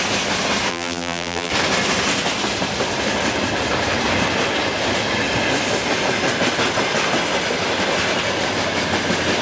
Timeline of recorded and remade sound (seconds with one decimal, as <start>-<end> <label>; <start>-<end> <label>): 0.0-0.7 recorded; 0.7-1.5 remade; 1.5-9.4 recorded

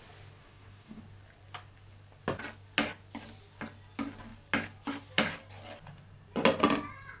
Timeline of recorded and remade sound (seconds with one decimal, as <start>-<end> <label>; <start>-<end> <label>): 0.0-0.4 recorded; 0.4-1.0 remade; 1.0-7.2 recorded

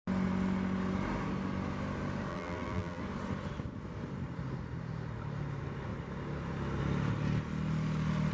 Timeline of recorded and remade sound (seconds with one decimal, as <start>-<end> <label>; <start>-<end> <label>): 0.0-2.3 recorded; 2.3-3.0 remade; 3.0-8.3 recorded

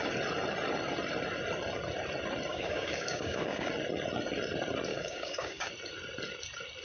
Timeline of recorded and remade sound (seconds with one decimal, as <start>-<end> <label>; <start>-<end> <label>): 0.0-2.5 recorded; 2.5-3.7 remade; 3.7-4.9 recorded; 4.9-5.7 remade; 5.7-6.8 recorded